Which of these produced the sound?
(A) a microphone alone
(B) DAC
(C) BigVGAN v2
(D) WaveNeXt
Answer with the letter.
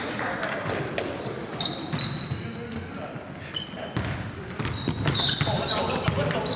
A